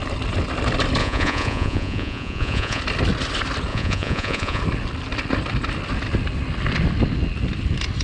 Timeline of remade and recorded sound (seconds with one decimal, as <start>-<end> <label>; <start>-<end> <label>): 0.0-1.0 recorded; 1.0-2.8 remade; 2.8-3.7 recorded; 3.7-4.6 remade; 4.6-8.0 recorded